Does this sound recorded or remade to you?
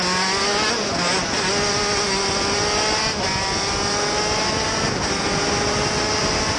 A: recorded